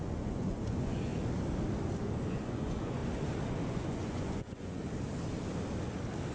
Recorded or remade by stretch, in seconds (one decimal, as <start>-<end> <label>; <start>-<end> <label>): 0.0-1.1 remade; 1.1-2.3 recorded; 2.3-3.0 remade; 3.0-3.7 recorded; 3.7-4.8 remade; 4.8-6.3 recorded